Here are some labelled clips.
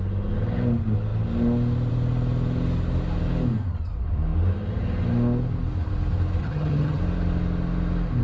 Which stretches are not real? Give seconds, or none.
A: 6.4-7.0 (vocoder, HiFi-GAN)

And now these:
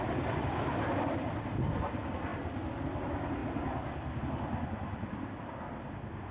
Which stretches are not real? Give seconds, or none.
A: none

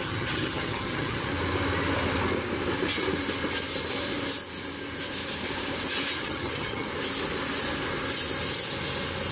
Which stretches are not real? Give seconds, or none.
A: 0.0-1.3 (vocoder, HiFi-GAN); 6.2-6.9

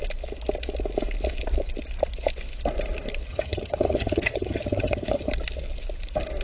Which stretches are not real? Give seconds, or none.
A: 3.3-5.3 (vocoder, HiFi-GAN)

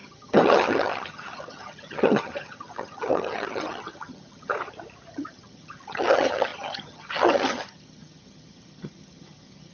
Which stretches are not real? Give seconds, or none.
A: 0.0-4.5 (vocoder, HiFi-GAN); 5.1-9.7